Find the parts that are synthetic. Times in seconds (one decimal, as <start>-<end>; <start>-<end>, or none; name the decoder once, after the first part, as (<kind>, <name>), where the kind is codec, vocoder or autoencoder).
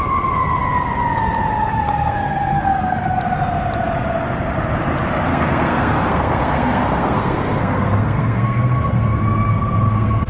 1.7-3.2 (codec, SNAC); 5.3-10.3